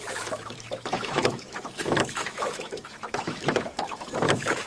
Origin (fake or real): fake